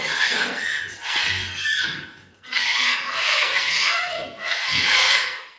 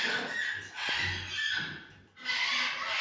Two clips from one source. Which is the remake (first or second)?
first